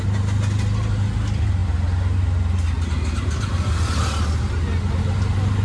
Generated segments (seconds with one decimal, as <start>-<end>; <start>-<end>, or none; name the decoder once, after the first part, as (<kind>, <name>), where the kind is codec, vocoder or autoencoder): none